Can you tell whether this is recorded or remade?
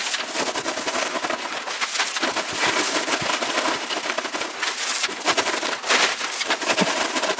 recorded